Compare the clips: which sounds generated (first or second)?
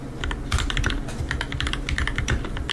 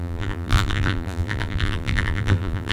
second